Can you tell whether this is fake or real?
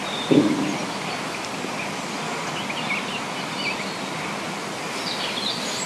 real